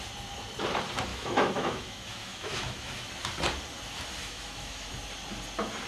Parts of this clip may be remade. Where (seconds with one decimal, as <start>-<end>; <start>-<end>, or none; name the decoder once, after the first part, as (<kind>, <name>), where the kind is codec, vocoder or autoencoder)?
1.1-3.1 (autoencoder, DAC-VAE); 4.2-4.9